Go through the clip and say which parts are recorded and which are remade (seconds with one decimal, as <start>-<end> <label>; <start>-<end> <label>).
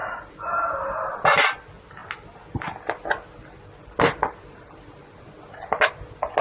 0.0-6.4 recorded